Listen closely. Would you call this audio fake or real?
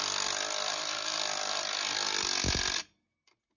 real